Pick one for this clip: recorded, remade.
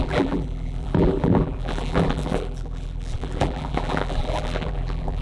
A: remade